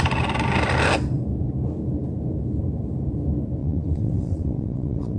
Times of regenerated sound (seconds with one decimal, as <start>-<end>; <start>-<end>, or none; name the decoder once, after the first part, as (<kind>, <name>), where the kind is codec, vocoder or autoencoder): 3.6-5.2 (vocoder, WaveNeXt)